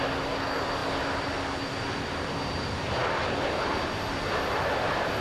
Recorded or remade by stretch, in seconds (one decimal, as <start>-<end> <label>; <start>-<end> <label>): 0.0-5.2 recorded